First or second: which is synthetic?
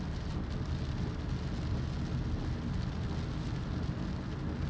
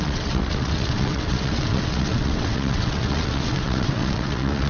second